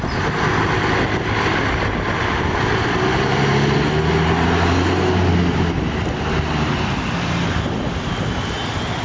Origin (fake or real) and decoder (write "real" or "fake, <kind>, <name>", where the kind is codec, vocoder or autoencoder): real